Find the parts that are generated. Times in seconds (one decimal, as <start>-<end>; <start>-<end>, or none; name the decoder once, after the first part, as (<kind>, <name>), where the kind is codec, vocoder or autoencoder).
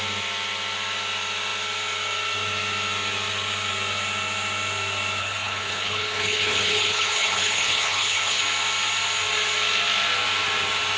5.2-8.4 (codec, HILCodec)